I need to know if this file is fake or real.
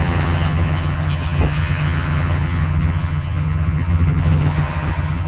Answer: fake